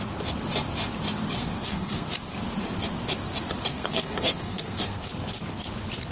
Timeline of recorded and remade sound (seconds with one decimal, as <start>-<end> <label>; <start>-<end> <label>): 0.0-1.4 recorded; 1.4-2.1 remade; 2.1-3.7 recorded; 3.7-5.1 remade; 5.1-6.1 recorded